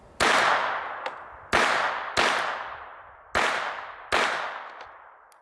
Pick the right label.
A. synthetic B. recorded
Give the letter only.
B